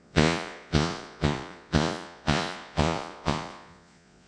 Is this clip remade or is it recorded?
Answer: remade